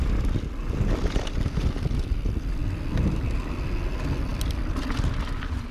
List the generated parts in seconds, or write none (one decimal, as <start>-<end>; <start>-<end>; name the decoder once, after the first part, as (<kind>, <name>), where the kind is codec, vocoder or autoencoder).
none